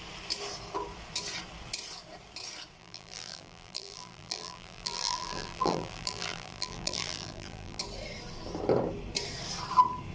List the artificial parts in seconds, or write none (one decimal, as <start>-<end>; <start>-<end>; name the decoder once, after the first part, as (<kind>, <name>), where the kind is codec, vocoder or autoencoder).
2.8-7.8 (vocoder, BigVGAN v2)